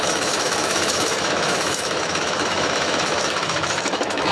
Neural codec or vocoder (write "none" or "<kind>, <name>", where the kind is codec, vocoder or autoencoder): autoencoder, DAC-VAE